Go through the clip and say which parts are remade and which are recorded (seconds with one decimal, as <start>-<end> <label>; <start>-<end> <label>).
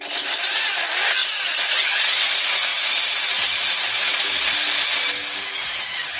0.0-2.7 recorded; 2.7-5.0 remade; 5.0-6.2 recorded